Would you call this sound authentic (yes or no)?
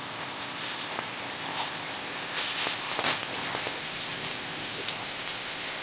no